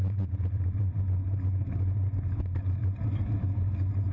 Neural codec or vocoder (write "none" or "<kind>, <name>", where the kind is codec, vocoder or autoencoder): none